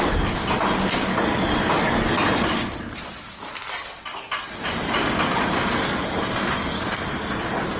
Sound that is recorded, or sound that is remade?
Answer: recorded